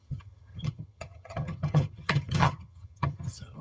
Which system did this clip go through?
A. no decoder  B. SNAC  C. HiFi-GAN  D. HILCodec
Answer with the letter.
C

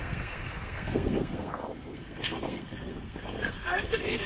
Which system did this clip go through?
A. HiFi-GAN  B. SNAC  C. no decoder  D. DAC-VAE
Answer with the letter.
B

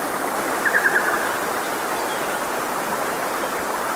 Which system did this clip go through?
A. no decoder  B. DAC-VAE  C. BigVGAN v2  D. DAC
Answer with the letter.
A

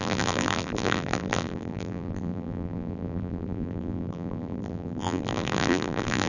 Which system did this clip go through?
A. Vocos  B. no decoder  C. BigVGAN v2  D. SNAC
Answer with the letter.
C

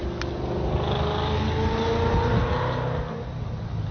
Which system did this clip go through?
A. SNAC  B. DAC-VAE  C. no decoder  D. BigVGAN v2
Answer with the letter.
C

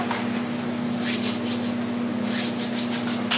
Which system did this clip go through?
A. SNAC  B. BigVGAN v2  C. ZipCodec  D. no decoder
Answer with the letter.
D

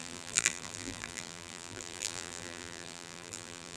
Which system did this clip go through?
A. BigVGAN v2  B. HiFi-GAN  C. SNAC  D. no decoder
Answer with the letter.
A